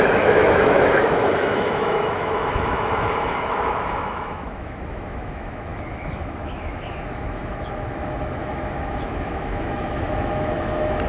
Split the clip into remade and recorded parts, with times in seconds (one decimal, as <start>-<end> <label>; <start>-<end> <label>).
0.0-11.1 remade